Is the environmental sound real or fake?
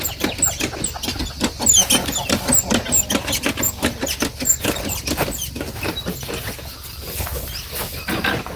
real